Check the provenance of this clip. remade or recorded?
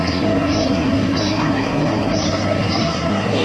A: remade